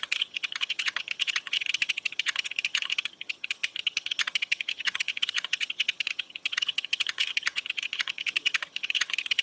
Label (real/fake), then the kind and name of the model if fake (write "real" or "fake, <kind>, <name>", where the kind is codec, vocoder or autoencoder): fake, vocoder, HiFi-GAN